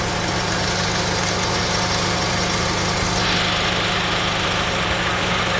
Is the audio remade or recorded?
recorded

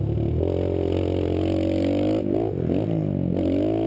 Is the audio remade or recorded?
recorded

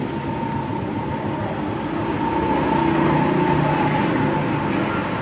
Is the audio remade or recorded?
recorded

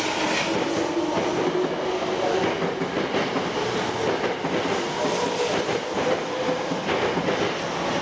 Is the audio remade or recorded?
recorded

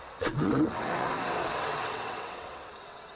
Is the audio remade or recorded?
remade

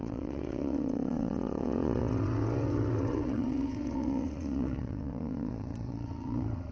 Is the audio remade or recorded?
remade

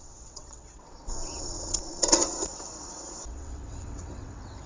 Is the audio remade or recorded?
remade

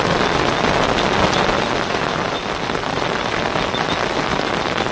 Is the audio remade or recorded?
recorded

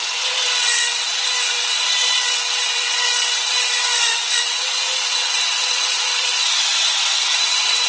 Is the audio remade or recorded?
remade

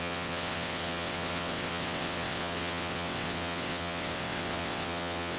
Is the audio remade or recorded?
remade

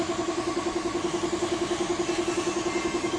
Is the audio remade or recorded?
recorded